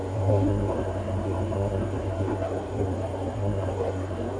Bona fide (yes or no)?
no